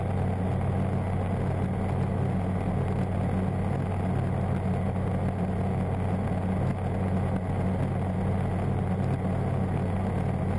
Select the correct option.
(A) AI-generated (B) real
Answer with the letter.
B